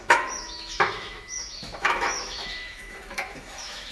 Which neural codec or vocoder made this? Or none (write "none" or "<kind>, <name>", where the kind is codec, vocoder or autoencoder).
autoencoder, DAC-VAE